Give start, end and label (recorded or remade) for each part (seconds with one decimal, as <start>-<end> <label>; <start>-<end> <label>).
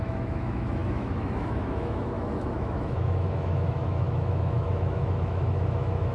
0.0-6.1 remade